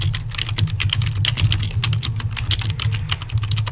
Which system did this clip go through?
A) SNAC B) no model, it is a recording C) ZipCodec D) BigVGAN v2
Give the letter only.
B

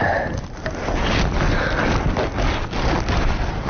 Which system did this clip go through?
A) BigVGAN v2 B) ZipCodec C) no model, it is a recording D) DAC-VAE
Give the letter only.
C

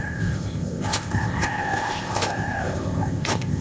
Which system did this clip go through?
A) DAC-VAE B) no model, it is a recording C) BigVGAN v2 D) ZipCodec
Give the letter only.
D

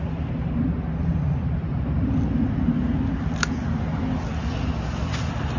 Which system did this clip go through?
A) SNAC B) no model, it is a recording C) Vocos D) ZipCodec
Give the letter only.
B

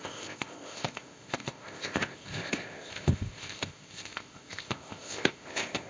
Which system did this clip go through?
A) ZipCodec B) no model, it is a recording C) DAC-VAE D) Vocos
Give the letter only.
A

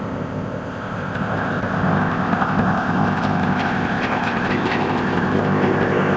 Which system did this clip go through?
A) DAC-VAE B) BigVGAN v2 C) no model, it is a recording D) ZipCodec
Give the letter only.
D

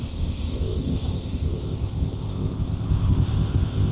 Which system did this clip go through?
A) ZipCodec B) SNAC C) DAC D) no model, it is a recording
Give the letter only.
A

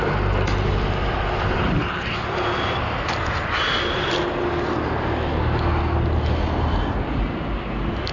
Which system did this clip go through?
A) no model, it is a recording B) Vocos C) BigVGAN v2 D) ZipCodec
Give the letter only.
A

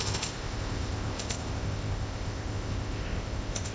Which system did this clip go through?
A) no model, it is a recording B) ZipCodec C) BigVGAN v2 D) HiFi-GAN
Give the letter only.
B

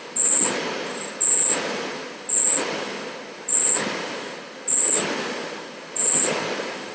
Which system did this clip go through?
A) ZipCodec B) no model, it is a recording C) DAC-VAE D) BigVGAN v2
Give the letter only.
B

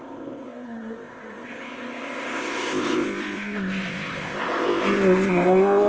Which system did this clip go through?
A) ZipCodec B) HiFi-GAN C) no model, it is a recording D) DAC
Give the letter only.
A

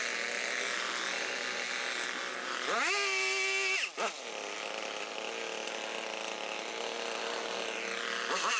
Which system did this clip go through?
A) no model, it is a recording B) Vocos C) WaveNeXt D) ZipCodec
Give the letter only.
A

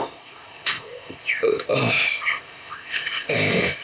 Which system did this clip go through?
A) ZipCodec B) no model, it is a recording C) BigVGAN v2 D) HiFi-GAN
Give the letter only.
A